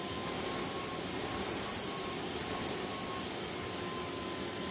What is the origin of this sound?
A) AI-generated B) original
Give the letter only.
B